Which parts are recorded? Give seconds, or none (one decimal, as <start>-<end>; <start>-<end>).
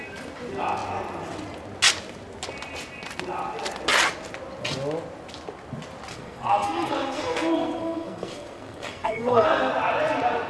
0.0-6.1; 9.7-10.5